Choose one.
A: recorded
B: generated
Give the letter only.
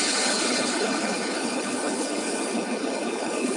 B